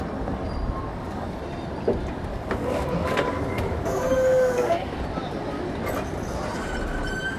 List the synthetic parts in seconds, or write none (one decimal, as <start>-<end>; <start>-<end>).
0.9-1.4; 2.3-5.0